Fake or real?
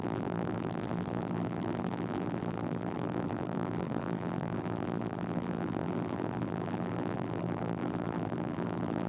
fake